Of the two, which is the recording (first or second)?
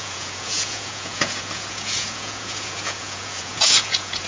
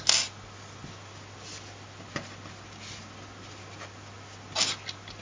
second